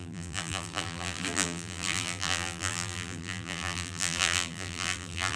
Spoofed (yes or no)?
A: yes